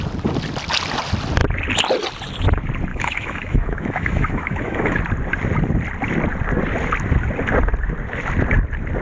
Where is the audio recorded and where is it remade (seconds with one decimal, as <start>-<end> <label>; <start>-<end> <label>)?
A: 0.0-2.9 recorded; 2.9-5.0 remade; 5.0-9.0 recorded